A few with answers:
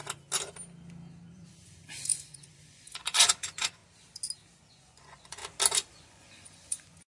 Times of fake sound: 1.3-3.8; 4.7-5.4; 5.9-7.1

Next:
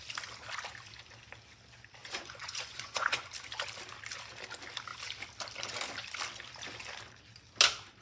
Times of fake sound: 2.0-3.3

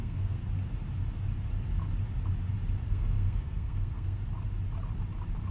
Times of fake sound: 0.0-0.4; 2.9-4.2